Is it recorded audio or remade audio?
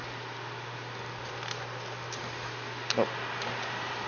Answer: recorded